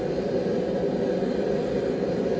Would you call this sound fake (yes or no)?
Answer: no